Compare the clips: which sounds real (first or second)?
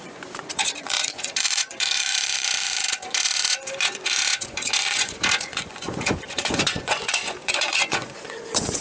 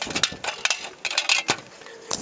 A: second